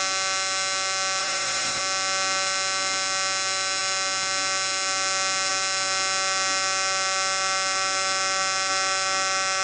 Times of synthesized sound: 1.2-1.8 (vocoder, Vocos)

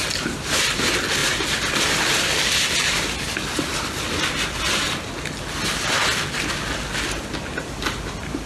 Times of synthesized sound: none

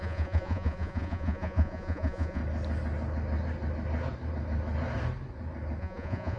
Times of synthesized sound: 0.0-2.4 (vocoder, Vocos); 5.8-6.4

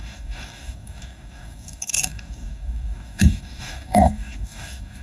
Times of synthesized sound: 0.0-5.0 (codec, DAC)

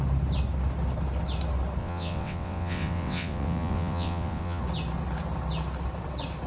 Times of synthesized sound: 1.8-4.6 (vocoder, WaveNeXt)

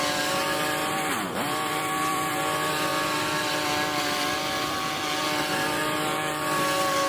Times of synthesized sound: 0.8-2.3 (vocoder, BigVGAN v2)